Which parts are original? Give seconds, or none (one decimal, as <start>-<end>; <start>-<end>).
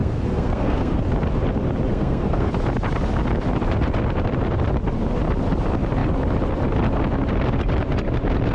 1.0-1.9; 2.5-8.5